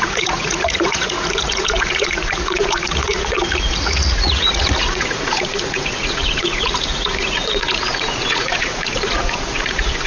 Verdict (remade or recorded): remade